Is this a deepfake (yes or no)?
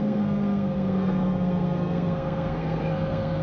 yes